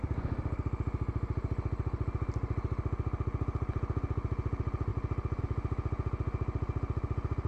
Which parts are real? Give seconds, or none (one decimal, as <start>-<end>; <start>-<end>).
0.0-7.5